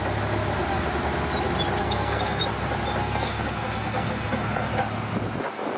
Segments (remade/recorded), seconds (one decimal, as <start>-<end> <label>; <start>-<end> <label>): 0.0-1.8 recorded; 1.8-2.4 remade; 2.4-3.0 recorded; 3.0-4.7 remade; 4.7-5.8 recorded

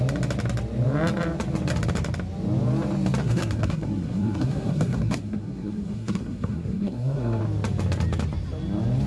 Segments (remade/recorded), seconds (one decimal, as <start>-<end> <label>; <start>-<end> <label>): 0.0-3.2 recorded; 3.2-7.4 remade; 7.4-9.1 recorded

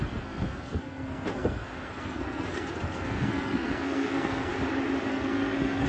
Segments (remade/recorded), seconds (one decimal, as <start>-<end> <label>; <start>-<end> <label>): 0.0-4.5 remade; 4.5-5.1 recorded; 5.1-5.9 remade

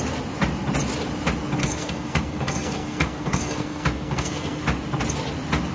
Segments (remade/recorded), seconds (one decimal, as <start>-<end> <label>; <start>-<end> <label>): 0.0-1.6 recorded; 1.6-4.6 remade; 4.6-5.7 recorded

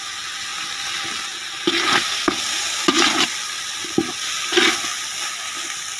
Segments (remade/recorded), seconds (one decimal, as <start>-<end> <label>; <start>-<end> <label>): 0.0-6.0 recorded